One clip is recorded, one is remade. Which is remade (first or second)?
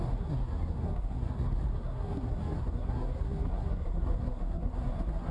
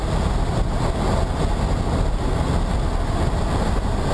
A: first